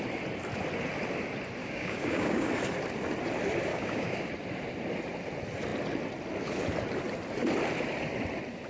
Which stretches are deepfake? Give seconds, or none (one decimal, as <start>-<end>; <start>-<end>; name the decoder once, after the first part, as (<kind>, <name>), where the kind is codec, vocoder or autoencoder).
1.6-2.5 (codec, DAC); 3.7-4.3